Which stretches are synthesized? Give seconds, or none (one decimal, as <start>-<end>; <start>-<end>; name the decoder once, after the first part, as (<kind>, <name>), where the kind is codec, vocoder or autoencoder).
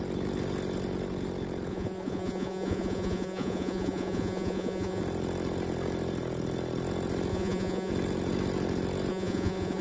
1.7-5.0 (vocoder, Vocos); 7.3-7.9; 9.1-9.8